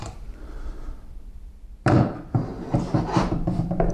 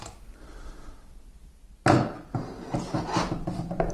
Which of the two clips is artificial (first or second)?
first